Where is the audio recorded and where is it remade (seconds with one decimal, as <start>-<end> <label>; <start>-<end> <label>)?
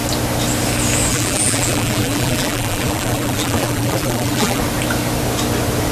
0.0-1.1 recorded; 1.1-4.6 remade; 4.6-5.9 recorded